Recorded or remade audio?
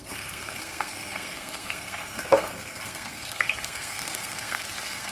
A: remade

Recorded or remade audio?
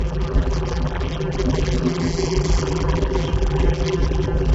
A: remade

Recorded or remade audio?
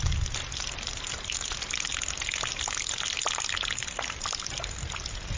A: recorded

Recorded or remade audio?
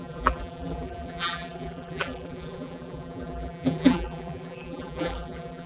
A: remade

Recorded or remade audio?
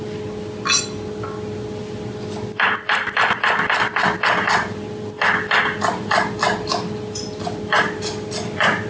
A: recorded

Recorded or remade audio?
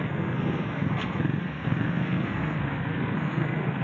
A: remade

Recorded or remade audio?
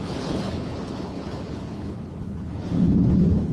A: remade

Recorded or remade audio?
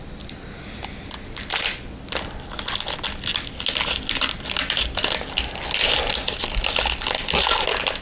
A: recorded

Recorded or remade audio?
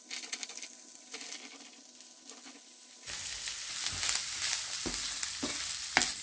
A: recorded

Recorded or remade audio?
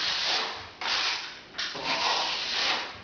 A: recorded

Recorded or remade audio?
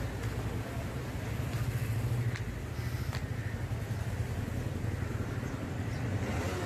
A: recorded